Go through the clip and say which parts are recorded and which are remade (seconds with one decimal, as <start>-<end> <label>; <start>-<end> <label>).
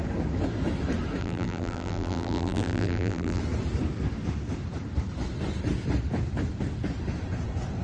0.0-1.2 recorded; 1.2-3.4 remade; 3.4-7.8 recorded